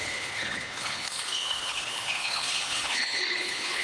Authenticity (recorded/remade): remade